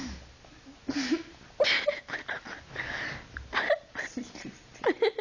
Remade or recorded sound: recorded